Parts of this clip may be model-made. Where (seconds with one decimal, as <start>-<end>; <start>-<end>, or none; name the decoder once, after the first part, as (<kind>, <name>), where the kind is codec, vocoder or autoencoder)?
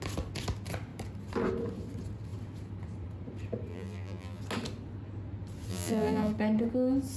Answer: 3.7-4.4 (vocoder, BigVGAN v2); 5.7-6.3